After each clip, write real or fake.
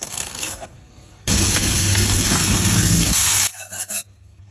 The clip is fake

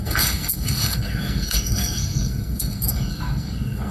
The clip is fake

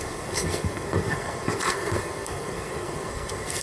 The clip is fake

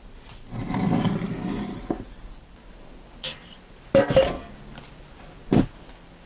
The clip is real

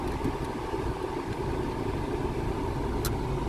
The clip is real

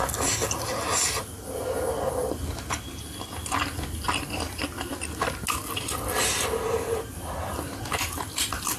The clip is real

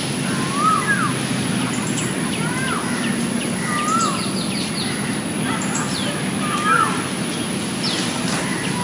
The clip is real